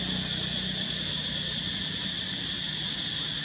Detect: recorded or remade recorded